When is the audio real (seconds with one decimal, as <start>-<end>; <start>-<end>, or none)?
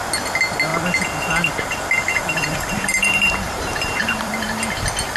0.0-2.1; 4.6-5.2